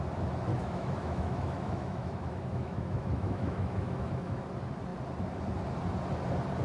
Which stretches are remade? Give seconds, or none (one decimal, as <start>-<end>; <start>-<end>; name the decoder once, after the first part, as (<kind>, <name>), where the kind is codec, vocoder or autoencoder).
0.5-4.5 (autoencoder, DAC-VAE)